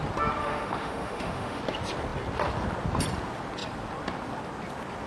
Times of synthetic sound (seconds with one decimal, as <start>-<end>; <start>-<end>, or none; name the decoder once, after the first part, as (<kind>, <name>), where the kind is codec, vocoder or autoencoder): 0.4-1.6 (autoencoder, DAC-VAE)

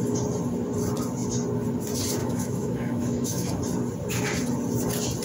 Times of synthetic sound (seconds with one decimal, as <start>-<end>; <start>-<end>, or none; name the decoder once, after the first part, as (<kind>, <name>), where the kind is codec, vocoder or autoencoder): 2.2-3.6 (autoencoder, DAC-VAE)

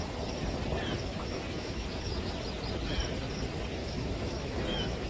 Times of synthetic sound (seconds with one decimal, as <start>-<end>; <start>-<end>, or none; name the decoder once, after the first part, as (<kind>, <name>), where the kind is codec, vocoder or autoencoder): 1.1-2.3 (autoencoder, DAC-VAE); 3.8-5.1

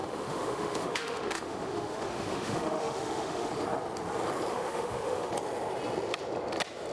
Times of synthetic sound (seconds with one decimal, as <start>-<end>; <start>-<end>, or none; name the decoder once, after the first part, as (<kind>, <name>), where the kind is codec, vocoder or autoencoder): 0.0-3.5 (autoencoder, DAC-VAE); 4.5-5.3

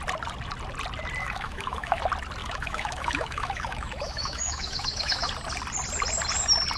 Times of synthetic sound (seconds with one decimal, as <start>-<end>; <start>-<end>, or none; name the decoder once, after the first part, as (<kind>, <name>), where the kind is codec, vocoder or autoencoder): 1.2-2.0 (autoencoder, DAC-VAE); 2.4-5.3

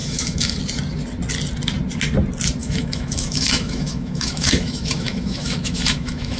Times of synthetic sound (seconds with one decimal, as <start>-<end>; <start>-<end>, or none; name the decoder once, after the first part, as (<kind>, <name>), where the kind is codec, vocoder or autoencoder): 0.0-0.6 (autoencoder, DAC-VAE); 2.6-6.4

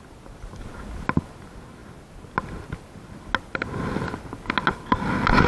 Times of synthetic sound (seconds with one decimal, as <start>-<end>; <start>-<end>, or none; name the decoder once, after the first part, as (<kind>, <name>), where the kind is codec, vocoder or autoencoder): none